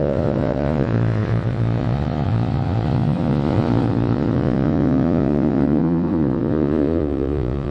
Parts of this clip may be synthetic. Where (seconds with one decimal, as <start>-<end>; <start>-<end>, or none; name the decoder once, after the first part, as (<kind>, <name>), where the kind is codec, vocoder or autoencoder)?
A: 0.0-7.7 (vocoder, Vocos)